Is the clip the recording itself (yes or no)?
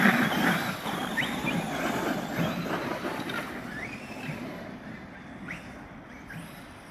yes